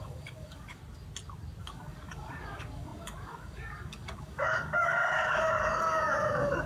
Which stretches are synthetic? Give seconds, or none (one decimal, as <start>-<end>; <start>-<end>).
0.0-0.8; 1.6-6.7